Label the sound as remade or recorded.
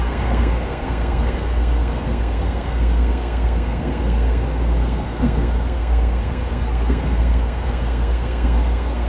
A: remade